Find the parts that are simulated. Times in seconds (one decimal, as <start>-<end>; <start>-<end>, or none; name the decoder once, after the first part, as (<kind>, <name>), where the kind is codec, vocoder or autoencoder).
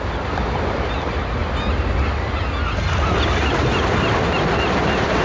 none